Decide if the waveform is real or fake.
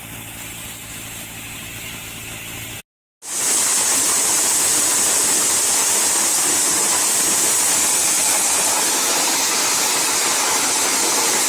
real